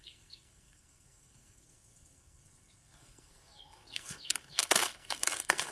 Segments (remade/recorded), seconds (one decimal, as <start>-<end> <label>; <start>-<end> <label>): 0.0-5.7 remade